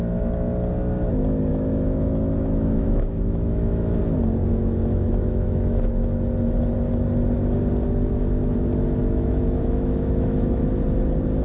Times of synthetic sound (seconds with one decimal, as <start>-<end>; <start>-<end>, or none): 1.5-4.0; 4.5-5.9; 9.0-10.6

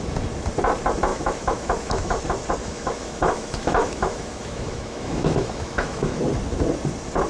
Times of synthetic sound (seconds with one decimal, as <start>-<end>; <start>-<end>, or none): 1.1-2.2; 2.6-6.2

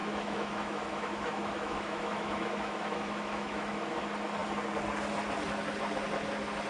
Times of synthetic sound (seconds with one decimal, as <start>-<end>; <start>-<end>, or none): 0.0-4.0

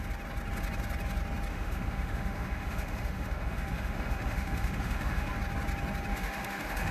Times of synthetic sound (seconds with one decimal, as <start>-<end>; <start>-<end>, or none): 1.5-5.3; 6.1-6.9

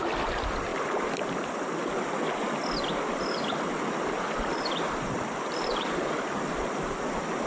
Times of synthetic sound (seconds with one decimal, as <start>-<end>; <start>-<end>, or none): none